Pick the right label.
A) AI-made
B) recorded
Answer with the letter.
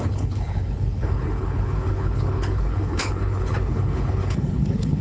A